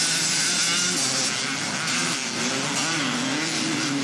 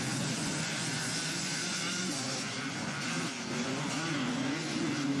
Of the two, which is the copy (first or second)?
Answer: second